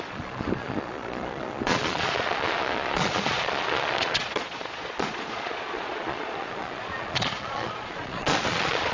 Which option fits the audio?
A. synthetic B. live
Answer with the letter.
A